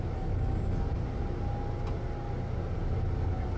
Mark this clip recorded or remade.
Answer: recorded